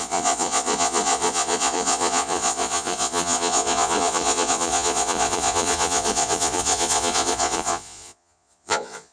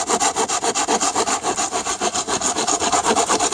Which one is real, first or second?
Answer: second